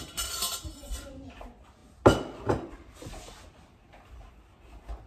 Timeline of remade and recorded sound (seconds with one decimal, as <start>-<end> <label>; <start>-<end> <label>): 0.0-5.1 recorded

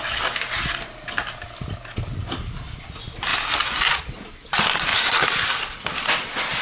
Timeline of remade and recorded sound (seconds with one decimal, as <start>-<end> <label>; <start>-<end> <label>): 0.0-6.6 recorded

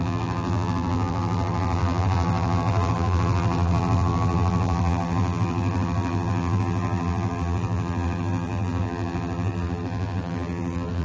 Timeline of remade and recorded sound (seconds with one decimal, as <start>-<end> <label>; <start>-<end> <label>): 0.0-11.0 remade

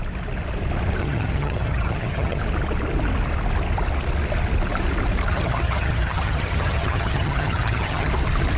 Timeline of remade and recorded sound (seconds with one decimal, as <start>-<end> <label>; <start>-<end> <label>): 0.0-1.0 recorded; 1.0-2.4 remade; 2.4-5.3 recorded; 5.3-8.1 remade; 8.1-8.6 recorded

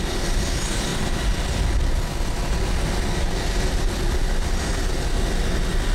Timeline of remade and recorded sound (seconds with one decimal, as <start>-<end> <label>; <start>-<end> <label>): 0.0-5.9 recorded

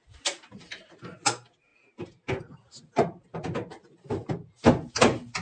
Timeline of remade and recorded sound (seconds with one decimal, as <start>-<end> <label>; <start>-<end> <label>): 0.0-5.4 recorded

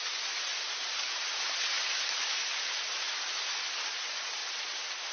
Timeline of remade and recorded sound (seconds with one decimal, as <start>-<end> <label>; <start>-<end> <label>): 0.0-5.1 recorded

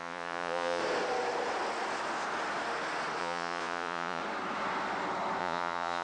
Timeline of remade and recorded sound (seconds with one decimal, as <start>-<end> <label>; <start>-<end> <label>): 0.0-0.8 remade; 0.8-3.2 recorded; 3.2-4.2 remade; 4.2-5.4 recorded; 5.4-6.0 remade